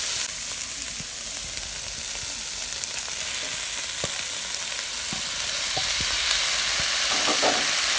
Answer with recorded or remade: recorded